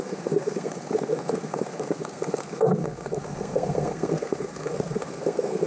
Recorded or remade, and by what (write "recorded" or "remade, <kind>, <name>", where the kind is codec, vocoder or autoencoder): remade, codec, SNAC